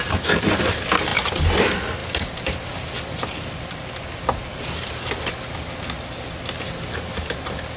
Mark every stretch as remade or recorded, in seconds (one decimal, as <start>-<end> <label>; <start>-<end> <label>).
0.0-7.8 recorded